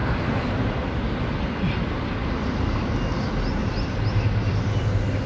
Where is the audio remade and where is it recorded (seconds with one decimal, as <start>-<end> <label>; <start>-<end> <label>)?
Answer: 0.0-1.5 remade; 1.5-3.6 recorded; 3.6-4.5 remade; 4.5-5.3 recorded